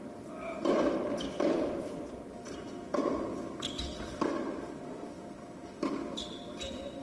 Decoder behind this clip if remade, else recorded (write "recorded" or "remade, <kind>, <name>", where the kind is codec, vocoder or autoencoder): recorded